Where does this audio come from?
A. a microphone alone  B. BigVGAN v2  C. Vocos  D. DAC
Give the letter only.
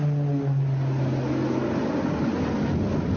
A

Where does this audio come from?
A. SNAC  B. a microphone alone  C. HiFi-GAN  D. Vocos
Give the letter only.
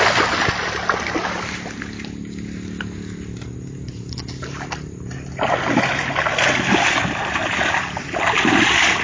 B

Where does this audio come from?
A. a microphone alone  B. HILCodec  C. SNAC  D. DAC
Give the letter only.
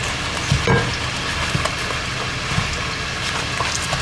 A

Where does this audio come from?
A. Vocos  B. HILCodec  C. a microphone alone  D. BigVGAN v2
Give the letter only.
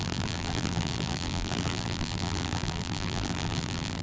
D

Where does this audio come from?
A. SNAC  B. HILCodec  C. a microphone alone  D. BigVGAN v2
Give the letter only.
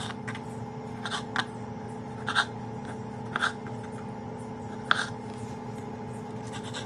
C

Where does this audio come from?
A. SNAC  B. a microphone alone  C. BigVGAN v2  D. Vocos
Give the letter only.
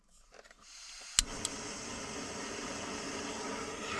B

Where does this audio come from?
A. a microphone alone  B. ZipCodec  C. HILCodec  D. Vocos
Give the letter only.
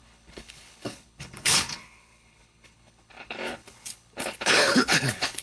C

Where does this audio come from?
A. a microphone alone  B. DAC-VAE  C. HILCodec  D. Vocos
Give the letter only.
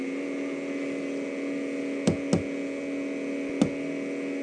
A